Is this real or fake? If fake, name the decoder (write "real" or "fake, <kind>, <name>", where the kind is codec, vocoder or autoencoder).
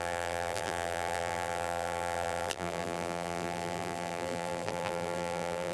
fake, vocoder, BigVGAN v2